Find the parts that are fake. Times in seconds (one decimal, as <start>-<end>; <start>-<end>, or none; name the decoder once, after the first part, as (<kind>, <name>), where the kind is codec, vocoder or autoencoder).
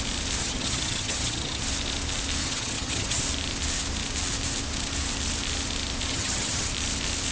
0.4-1.6 (vocoder, HiFi-GAN); 2.4-3.2; 6.1-6.7